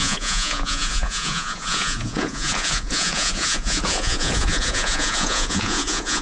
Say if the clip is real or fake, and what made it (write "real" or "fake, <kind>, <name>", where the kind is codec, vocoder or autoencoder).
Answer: fake, vocoder, Vocos